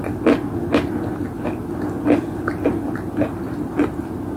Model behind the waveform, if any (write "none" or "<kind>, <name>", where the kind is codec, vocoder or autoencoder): none